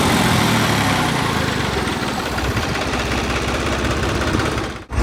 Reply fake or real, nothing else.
fake